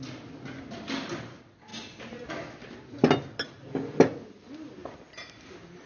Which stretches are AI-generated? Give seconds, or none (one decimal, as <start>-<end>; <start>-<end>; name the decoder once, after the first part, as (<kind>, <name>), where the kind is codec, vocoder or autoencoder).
none